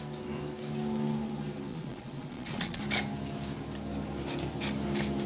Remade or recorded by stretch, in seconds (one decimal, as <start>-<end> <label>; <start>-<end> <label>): 0.0-1.7 recorded; 1.7-2.8 remade; 2.8-5.3 recorded